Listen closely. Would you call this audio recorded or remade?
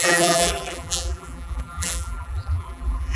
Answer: remade